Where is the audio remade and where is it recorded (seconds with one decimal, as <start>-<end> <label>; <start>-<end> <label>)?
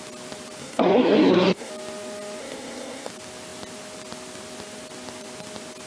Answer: 0.0-0.6 recorded; 0.6-1.7 remade; 1.7-2.4 recorded; 2.4-3.1 remade; 3.1-5.9 recorded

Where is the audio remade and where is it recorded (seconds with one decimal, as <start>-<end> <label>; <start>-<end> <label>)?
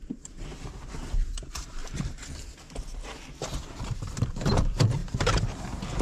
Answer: 0.0-1.8 remade; 1.8-3.6 recorded; 3.6-6.0 remade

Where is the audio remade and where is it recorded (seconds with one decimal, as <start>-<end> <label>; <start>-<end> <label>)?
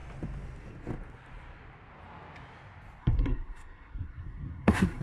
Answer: 0.0-3.0 recorded; 3.0-5.0 remade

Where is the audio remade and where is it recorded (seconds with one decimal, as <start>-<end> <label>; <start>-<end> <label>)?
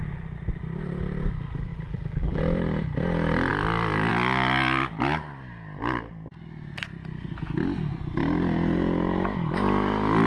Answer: 0.0-1.7 recorded; 1.7-2.4 remade; 2.4-10.3 recorded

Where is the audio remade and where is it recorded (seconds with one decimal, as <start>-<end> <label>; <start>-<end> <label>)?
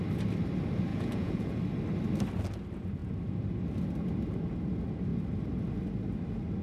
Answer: 0.0-0.9 recorded; 0.9-1.6 remade; 1.6-6.6 recorded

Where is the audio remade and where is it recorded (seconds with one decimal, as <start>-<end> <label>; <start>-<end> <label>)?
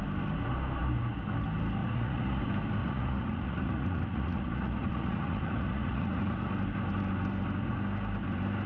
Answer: 0.0-1.8 recorded; 1.8-2.4 remade; 2.4-2.8 recorded; 2.8-6.5 remade; 6.5-8.7 recorded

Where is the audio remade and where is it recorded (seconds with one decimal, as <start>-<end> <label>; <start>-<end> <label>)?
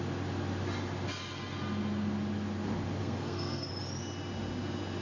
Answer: 0.0-3.0 recorded; 3.0-3.7 remade; 3.7-5.0 recorded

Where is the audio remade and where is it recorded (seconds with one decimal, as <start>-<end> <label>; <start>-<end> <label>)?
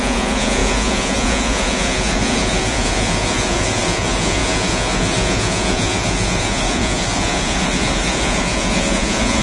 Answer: 0.0-9.4 remade